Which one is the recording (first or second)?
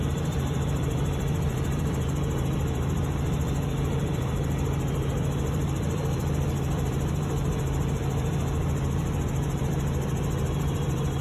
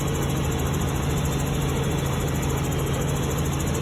second